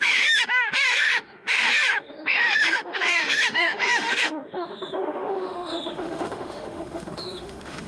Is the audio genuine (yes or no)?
no